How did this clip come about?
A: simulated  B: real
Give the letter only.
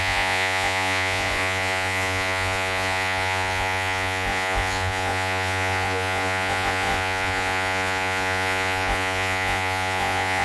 A